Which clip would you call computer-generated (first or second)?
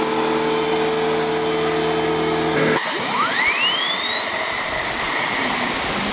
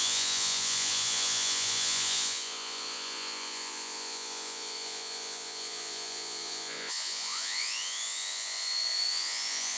second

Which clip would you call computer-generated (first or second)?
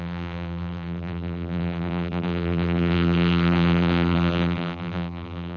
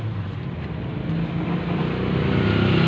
first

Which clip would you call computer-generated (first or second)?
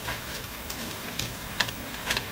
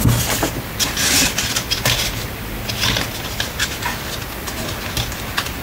first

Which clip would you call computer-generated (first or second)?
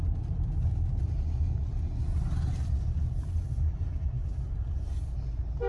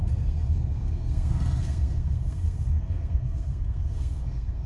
second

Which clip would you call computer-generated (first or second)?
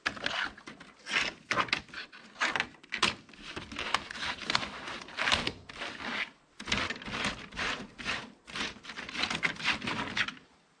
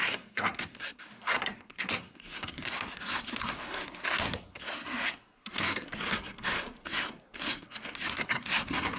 second